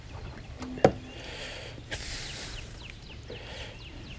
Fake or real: real